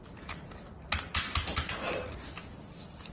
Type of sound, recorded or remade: recorded